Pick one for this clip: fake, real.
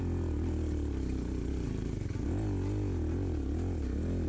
real